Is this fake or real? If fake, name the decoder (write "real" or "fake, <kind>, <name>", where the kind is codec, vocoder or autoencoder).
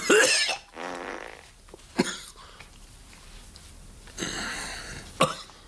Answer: real